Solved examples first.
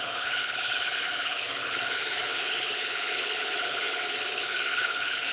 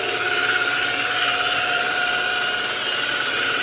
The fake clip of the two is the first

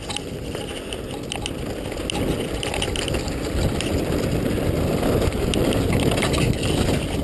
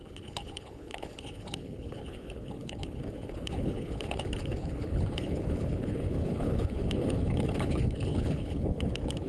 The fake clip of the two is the second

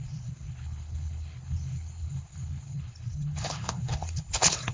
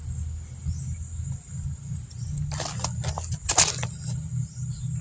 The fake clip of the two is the first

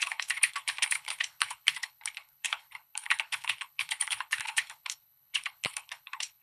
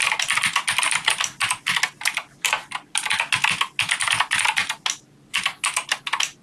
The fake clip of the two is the first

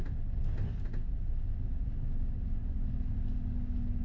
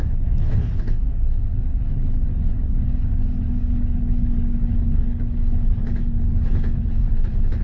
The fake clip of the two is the second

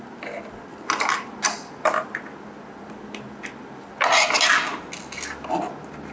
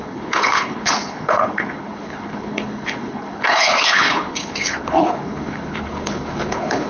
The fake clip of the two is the second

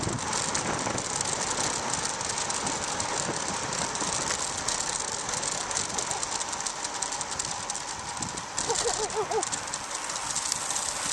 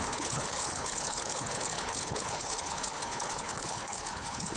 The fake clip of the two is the second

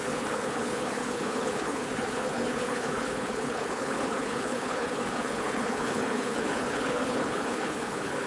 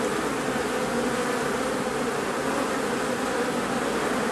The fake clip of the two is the first